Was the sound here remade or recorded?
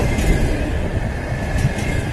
recorded